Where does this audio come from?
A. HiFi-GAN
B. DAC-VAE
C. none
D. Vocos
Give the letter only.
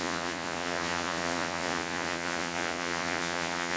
D